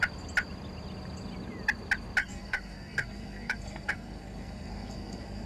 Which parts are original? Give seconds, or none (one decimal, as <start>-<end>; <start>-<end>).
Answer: 0.0-2.2